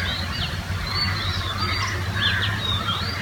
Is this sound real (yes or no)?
yes